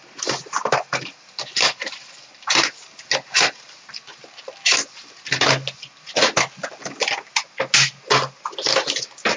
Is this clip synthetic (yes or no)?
no